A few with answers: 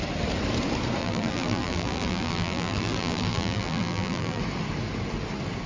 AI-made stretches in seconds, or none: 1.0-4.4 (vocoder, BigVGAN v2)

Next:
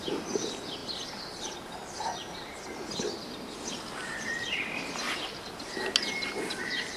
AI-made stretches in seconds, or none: 0.8-2.6 (vocoder, BigVGAN v2)